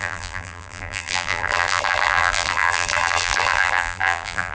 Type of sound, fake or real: fake